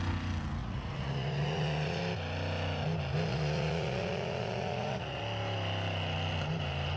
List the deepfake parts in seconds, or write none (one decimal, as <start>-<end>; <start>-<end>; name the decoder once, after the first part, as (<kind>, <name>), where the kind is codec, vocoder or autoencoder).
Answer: 0.6-2.0 (vocoder, Vocos); 3.3-5.2